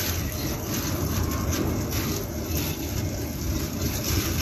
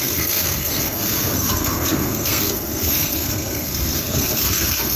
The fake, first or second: second